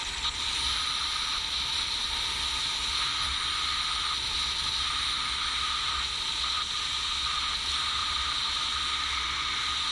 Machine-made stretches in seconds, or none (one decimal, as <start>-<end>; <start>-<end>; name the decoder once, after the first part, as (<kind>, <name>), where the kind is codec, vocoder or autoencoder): 0.0-1.4 (vocoder, BigVGAN v2); 8.0-8.5